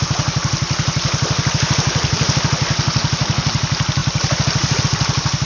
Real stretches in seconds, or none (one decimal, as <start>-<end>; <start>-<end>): 0.0-5.5